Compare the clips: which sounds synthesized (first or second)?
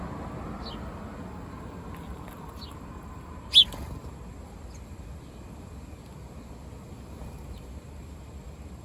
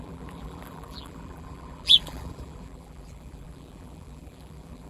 second